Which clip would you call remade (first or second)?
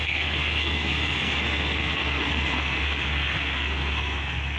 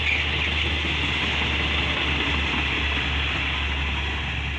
first